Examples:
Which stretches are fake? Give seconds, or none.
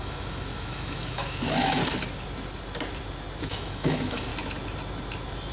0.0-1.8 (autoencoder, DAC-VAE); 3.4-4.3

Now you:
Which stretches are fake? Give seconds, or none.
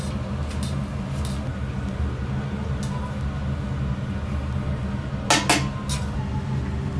none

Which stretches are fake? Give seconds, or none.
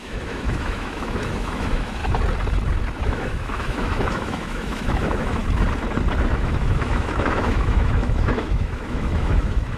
0.0-2.0 (autoencoder, DAC-VAE); 3.0-5.4; 6.3-9.8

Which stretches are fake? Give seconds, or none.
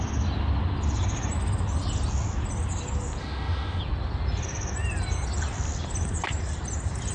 3.2-3.8 (autoencoder, DAC-VAE)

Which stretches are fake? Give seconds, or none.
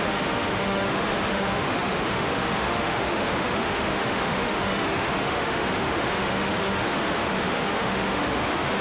0.0-8.8 (autoencoder, DAC-VAE)